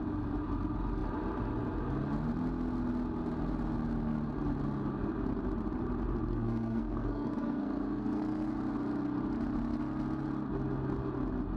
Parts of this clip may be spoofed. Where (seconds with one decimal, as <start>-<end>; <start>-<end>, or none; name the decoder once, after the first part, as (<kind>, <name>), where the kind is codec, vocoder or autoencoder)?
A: 6.3-8.5 (codec, SNAC)